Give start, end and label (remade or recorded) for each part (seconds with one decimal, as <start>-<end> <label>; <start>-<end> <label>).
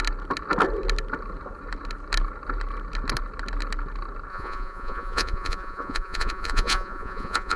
0.0-4.3 recorded; 4.3-7.6 remade